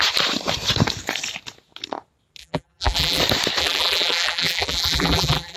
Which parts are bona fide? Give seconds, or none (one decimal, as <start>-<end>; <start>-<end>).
0.0-2.4; 3.2-3.6